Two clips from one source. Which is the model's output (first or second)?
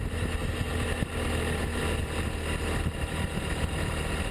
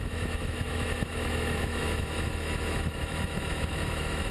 second